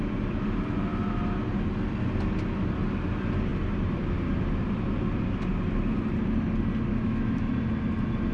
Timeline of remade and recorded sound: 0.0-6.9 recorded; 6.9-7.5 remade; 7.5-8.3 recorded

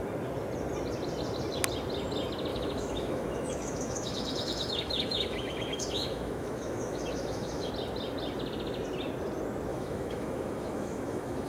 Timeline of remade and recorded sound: 0.0-2.5 recorded; 2.5-7.7 remade; 7.7-9.7 recorded; 9.7-11.5 remade

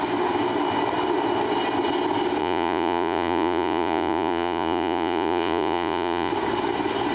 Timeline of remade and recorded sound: 0.0-2.4 recorded; 2.4-6.3 remade; 6.3-7.1 recorded

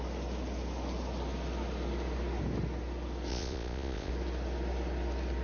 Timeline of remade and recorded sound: 0.0-3.3 recorded; 3.3-4.1 remade; 4.1-5.4 recorded

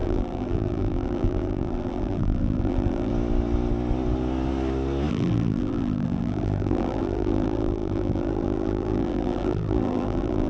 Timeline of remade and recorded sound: 0.0-3.1 remade; 3.1-5.1 recorded; 5.1-10.5 remade

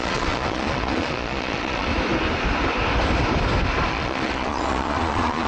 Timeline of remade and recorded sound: 0.0-1.9 remade; 1.9-3.9 recorded; 3.9-5.5 remade

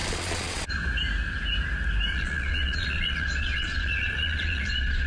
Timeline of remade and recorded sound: 0.0-0.7 remade; 0.7-2.1 recorded; 2.1-5.1 remade

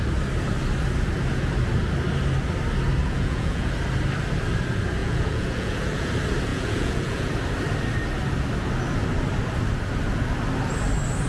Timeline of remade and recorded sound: 0.0-3.0 recorded; 3.0-3.7 remade; 3.7-5.0 recorded; 5.0-6.1 remade; 6.1-6.5 recorded; 6.5-7.3 remade; 7.3-11.3 recorded